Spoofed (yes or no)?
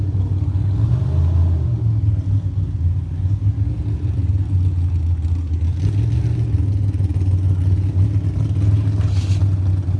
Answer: no